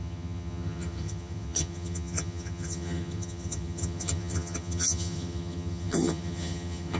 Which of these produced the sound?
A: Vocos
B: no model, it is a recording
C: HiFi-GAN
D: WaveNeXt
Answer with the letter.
C